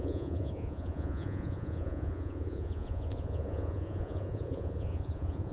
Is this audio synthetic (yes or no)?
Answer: yes